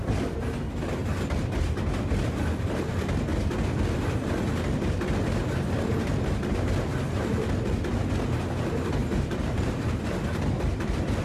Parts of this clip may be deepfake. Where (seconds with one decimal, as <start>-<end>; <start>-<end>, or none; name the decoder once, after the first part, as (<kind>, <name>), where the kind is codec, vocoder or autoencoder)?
6.9-7.5 (vocoder, BigVGAN v2); 9.0-10.0